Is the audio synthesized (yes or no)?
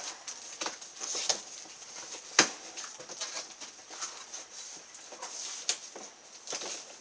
no